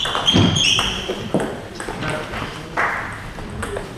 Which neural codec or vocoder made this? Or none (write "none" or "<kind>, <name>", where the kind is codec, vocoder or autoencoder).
vocoder, BigVGAN v2